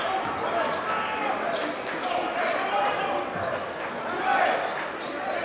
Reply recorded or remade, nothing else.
recorded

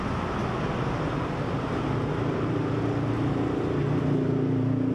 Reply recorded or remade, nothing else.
recorded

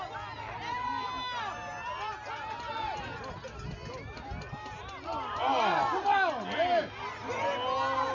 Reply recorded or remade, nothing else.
recorded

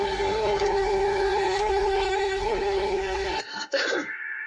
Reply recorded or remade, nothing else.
remade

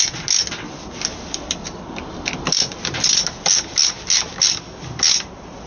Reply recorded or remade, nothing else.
recorded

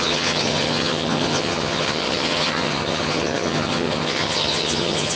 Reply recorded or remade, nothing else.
remade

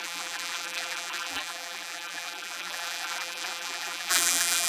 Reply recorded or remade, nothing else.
remade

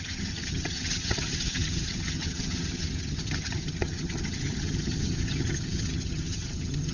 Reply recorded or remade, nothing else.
remade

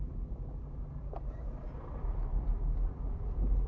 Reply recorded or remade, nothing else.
remade